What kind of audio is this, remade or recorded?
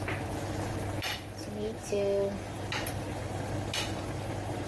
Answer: recorded